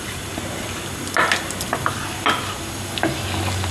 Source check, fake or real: real